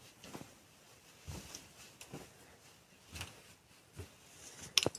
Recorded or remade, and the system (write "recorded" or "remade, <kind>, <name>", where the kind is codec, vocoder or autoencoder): recorded